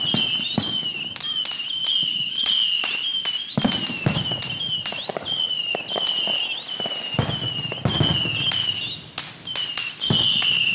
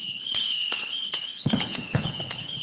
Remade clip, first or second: second